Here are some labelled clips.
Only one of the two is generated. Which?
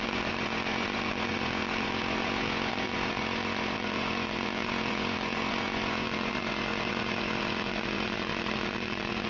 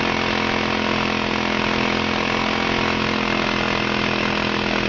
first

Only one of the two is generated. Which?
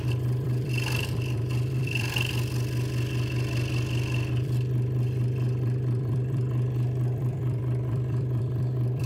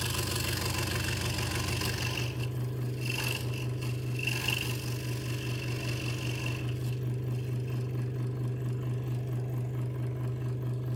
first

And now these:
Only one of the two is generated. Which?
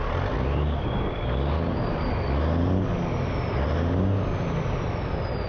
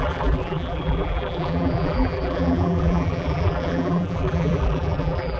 second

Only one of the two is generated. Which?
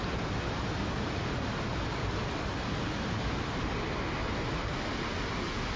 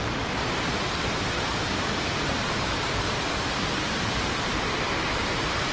second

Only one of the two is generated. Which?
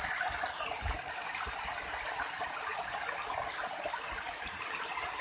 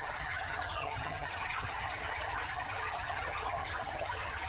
second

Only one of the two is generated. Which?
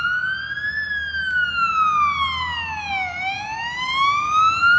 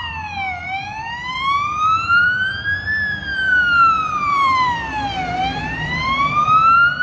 second